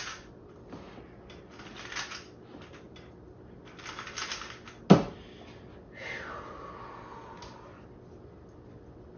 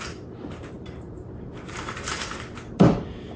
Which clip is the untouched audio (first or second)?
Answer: first